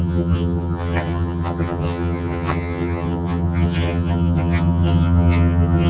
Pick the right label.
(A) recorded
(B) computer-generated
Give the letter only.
B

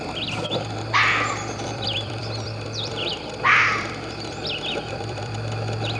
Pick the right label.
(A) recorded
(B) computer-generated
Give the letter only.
B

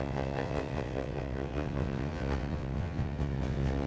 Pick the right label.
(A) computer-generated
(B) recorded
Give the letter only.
A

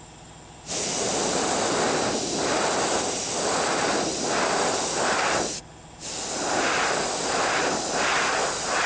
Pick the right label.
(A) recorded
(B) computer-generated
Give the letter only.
A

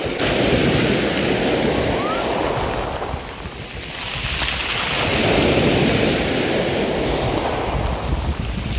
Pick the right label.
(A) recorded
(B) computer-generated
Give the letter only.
A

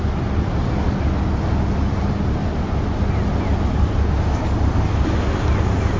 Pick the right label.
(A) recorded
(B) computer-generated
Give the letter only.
A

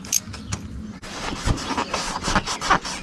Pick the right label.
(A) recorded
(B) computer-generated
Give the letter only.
A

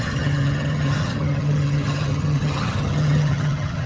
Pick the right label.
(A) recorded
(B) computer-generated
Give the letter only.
B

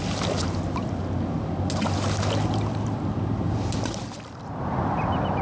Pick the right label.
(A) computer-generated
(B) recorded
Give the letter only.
B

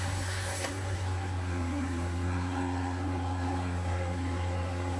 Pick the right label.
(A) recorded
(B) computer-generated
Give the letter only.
B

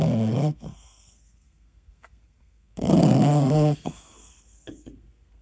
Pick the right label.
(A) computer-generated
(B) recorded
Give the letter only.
A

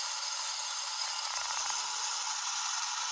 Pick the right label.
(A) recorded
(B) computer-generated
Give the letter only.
A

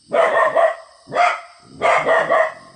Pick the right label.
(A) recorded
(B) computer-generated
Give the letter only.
A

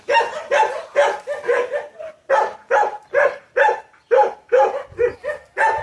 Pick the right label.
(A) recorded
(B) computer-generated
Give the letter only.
A